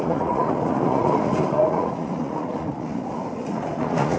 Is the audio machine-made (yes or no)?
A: yes